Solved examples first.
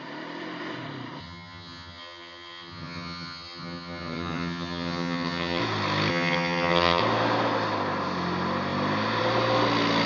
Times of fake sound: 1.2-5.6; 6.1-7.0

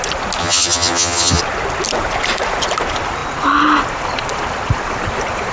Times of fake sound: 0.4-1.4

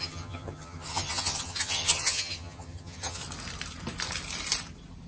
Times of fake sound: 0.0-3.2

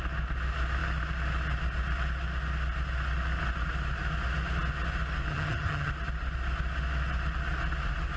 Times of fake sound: 5.3-5.9

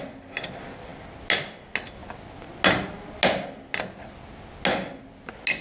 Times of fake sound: none

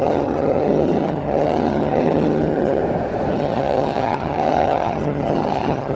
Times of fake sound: 0.0-2.8; 3.3-5.9

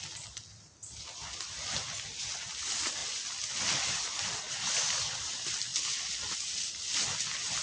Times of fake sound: none